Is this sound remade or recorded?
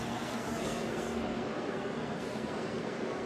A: remade